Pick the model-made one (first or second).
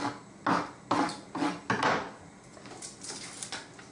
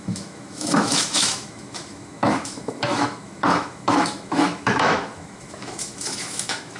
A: second